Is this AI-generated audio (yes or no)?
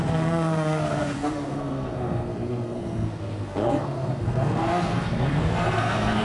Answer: yes